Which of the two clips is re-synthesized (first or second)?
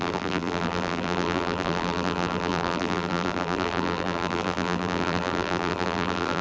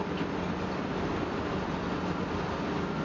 first